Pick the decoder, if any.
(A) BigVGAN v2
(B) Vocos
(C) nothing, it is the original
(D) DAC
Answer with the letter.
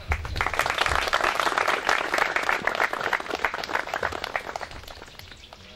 C